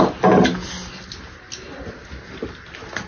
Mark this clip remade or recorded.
recorded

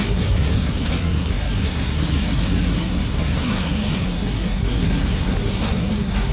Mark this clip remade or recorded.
remade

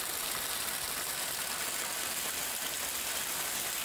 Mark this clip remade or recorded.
recorded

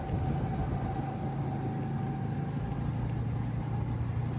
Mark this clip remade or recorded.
recorded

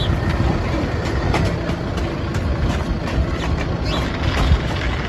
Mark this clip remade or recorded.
recorded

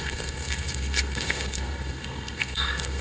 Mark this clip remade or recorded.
remade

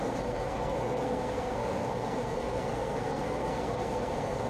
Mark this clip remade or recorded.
remade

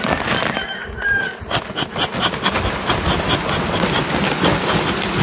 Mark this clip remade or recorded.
recorded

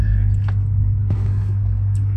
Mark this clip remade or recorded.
remade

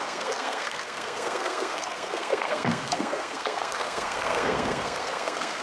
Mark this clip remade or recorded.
remade